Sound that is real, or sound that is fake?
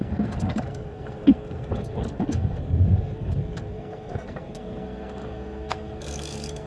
fake